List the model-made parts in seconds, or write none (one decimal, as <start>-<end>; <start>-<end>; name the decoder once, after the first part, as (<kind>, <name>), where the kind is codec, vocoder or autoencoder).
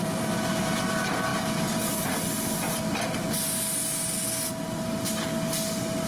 none